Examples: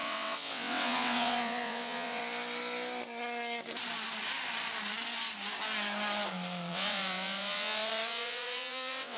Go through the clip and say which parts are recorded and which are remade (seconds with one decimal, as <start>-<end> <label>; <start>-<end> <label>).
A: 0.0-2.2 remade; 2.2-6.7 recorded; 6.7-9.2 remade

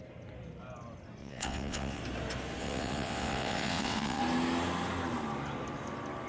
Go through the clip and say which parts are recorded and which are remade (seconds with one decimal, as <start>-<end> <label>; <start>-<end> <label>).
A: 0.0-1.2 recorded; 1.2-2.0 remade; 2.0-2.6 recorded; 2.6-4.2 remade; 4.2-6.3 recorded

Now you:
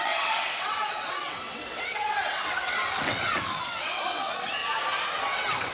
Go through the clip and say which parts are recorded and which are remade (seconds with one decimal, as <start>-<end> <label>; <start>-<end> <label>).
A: 0.0-4.6 remade; 4.6-5.2 recorded; 5.2-5.7 remade

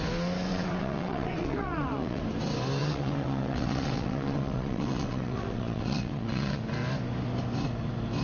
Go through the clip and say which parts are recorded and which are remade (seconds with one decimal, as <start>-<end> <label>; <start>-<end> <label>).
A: 0.0-0.5 recorded; 0.5-2.2 remade; 2.2-2.8 recorded; 2.8-6.6 remade; 6.6-8.2 recorded